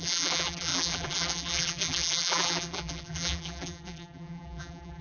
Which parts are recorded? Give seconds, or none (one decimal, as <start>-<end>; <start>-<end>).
none